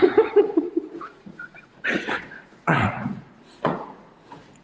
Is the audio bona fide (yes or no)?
no